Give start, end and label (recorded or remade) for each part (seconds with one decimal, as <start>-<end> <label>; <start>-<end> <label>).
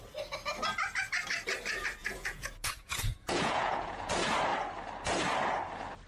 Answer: 0.0-2.0 recorded; 2.0-4.1 remade; 4.1-6.1 recorded